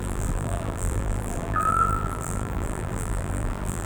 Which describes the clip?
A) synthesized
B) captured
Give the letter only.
A